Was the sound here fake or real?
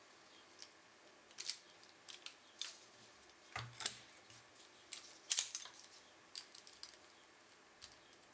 real